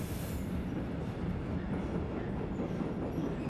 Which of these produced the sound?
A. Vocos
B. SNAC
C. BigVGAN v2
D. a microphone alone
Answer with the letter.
D